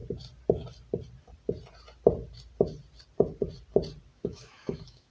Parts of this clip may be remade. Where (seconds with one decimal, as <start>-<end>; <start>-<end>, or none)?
4.1-5.1